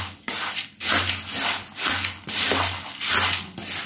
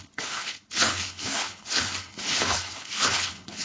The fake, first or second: second